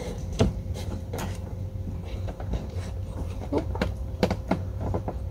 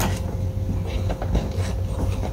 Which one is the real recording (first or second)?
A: second